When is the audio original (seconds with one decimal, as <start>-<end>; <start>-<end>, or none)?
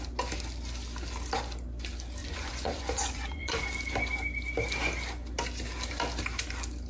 0.0-2.2; 3.6-6.9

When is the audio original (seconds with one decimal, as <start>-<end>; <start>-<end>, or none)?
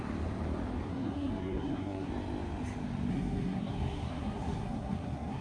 0.0-0.9; 2.1-3.1